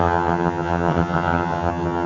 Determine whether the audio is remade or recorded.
remade